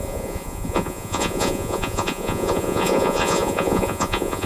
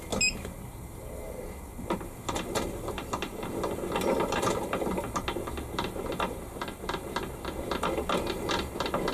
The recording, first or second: second